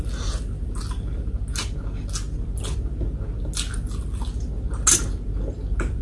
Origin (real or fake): real